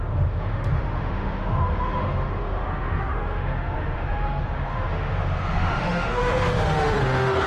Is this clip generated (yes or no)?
yes